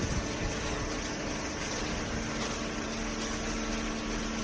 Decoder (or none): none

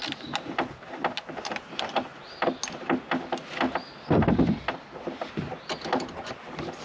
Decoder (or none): none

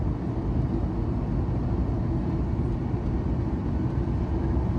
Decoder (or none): none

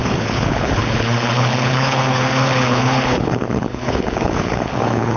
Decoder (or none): codec, HILCodec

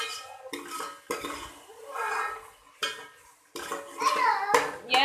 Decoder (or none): vocoder, BigVGAN v2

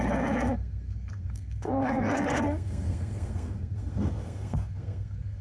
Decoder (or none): codec, SNAC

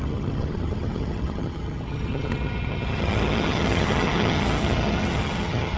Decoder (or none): vocoder, HiFi-GAN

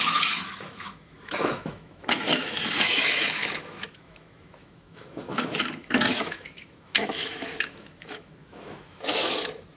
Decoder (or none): autoencoder, DAC-VAE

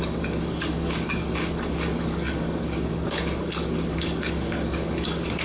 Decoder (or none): codec, DAC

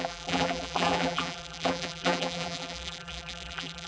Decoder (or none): vocoder, BigVGAN v2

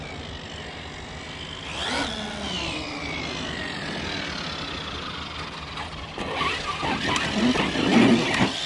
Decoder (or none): none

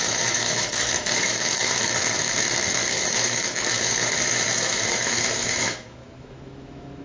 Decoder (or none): autoencoder, DAC-VAE